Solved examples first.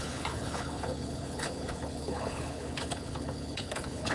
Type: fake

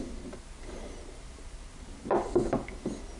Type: real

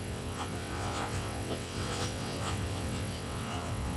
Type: fake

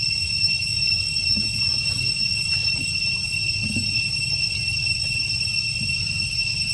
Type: real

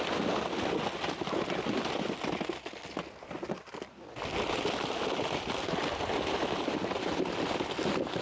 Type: real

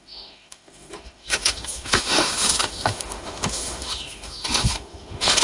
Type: fake